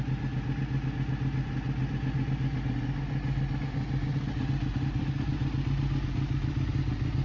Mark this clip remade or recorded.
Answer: recorded